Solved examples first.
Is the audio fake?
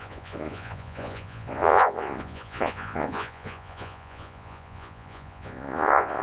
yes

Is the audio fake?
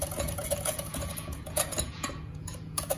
yes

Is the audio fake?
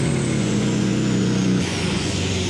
yes